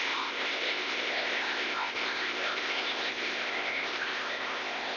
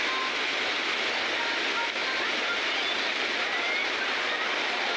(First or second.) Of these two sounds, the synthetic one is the first